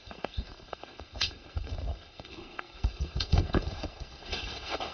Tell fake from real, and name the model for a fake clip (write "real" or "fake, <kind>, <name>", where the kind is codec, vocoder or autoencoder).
fake, codec, SNAC